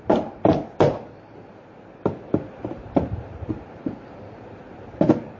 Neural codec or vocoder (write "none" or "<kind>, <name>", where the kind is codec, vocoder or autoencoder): vocoder, BigVGAN v2